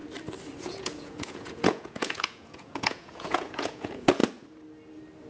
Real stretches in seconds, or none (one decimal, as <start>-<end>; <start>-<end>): 0.0-0.6; 4.2-5.3